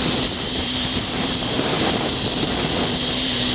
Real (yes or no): no